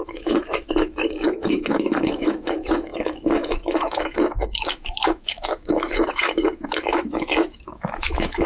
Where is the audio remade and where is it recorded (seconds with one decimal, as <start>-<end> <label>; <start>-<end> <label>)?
0.0-8.5 remade